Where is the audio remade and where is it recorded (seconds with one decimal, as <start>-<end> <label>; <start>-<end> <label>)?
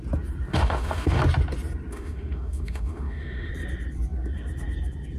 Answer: 0.0-0.5 recorded; 0.5-1.2 remade; 1.2-1.9 recorded; 1.9-3.5 remade; 3.5-5.2 recorded